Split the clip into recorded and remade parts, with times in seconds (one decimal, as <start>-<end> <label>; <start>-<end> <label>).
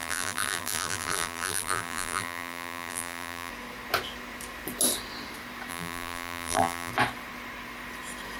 0.0-3.5 remade; 3.5-5.7 recorded; 5.7-6.9 remade; 6.9-8.4 recorded